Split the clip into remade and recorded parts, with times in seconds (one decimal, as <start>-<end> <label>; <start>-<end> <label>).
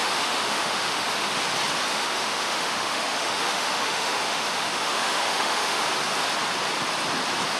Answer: 0.0-1.3 remade; 1.3-1.9 recorded; 1.9-5.8 remade; 5.8-7.6 recorded